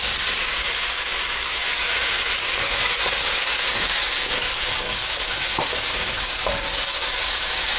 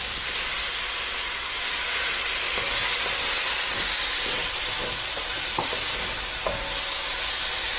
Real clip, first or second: second